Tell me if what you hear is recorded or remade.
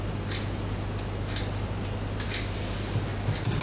recorded